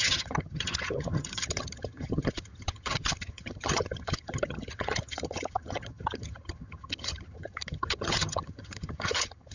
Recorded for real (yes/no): no